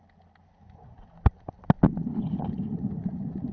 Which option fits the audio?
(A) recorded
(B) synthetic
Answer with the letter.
A